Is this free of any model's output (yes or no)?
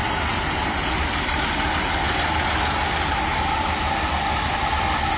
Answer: yes